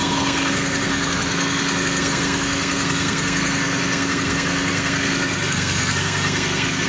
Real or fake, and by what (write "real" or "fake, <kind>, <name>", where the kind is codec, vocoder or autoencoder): fake, codec, SNAC